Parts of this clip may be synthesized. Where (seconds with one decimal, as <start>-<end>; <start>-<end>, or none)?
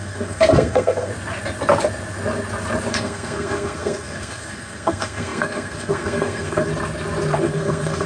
0.0-1.1; 2.9-6.7; 7.4-8.1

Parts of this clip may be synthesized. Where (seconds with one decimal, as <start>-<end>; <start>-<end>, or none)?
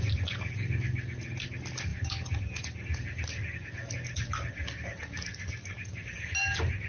none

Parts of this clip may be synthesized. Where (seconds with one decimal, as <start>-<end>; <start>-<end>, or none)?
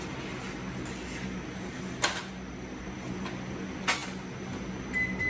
none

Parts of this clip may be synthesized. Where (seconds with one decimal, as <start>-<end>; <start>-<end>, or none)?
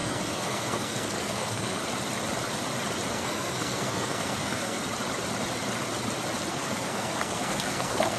0.0-1.8; 3.1-4.8; 6.5-8.2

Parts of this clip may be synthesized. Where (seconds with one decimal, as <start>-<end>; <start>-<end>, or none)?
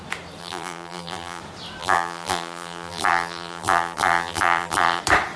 0.4-1.4; 1.8-5.0